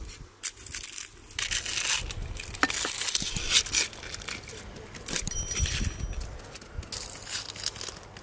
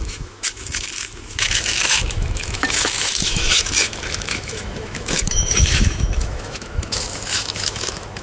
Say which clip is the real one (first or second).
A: first